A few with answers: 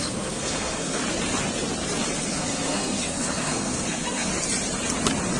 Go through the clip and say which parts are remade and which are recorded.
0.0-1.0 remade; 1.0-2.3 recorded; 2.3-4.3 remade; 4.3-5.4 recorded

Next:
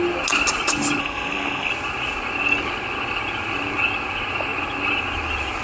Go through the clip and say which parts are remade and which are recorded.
0.0-1.0 recorded; 1.0-1.7 remade; 1.7-5.6 recorded

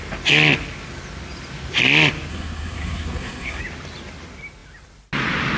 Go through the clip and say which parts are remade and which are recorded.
0.0-2.3 recorded; 2.3-3.6 remade; 3.6-5.6 recorded